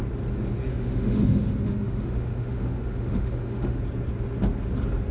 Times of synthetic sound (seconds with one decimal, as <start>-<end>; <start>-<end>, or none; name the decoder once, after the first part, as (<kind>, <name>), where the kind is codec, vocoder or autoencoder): 0.7-3.8 (autoencoder, DAC-VAE)